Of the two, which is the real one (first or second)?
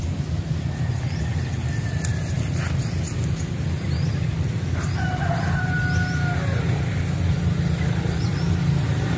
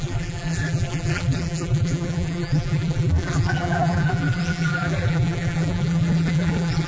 first